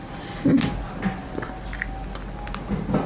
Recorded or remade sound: recorded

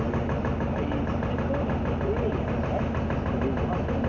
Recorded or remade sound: recorded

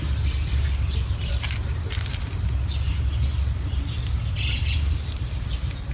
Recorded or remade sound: recorded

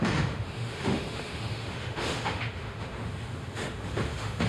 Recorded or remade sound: remade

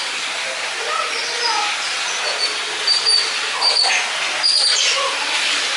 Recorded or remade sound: recorded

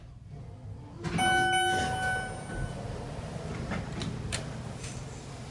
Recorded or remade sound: recorded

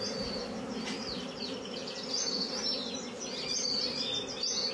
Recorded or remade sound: recorded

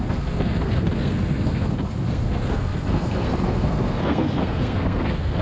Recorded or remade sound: remade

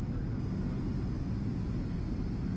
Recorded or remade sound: recorded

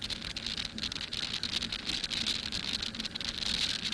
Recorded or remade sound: recorded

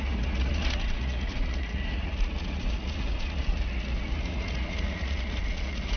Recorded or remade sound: remade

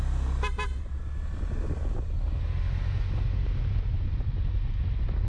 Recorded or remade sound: recorded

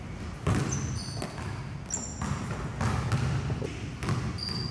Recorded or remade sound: recorded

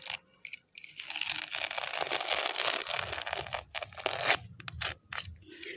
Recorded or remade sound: recorded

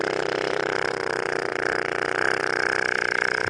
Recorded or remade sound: remade